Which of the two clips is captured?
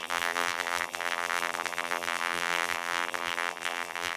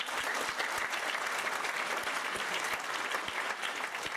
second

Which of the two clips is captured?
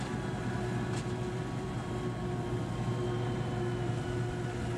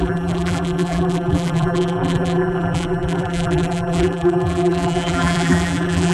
first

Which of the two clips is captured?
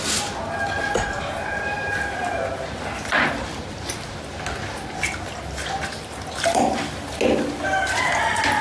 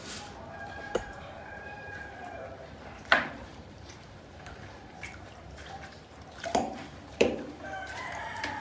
first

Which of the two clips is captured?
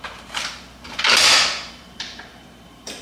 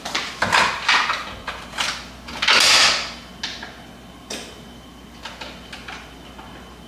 second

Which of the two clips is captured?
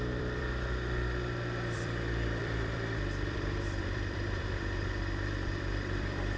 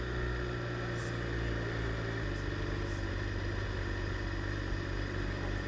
second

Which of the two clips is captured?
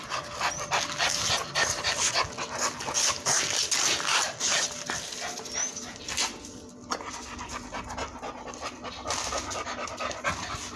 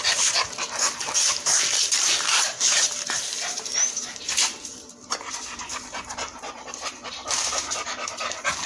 first